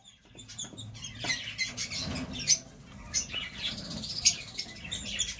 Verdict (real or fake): real